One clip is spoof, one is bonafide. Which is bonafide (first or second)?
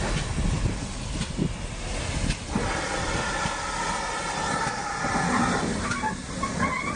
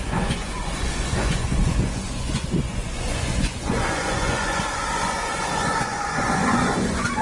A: first